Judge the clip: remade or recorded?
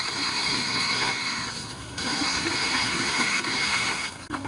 remade